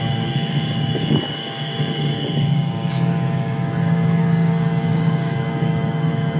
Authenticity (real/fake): fake